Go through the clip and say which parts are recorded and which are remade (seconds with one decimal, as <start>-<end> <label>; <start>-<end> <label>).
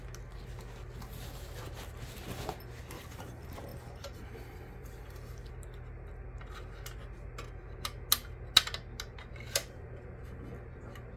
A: 0.0-3.7 recorded; 3.7-5.5 remade; 5.5-11.2 recorded